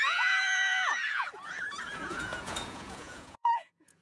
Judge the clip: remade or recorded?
remade